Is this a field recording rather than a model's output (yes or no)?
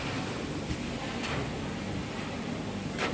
yes